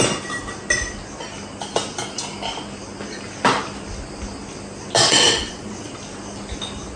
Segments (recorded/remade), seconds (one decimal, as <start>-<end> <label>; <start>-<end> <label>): 0.0-5.1 recorded; 5.1-5.9 remade; 5.9-7.0 recorded